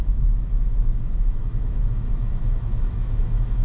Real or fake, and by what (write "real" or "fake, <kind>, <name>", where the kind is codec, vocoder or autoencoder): fake, autoencoder, DAC-VAE